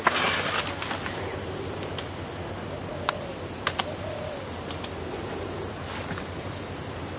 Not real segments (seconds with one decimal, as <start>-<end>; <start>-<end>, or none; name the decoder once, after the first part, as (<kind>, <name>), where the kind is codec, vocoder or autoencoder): none